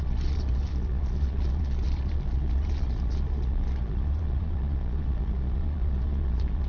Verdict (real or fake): fake